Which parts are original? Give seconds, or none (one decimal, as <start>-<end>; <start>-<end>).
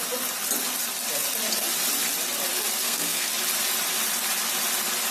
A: 0.0-2.8; 3.3-5.1